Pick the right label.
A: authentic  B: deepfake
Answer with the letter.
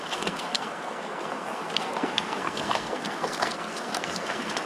B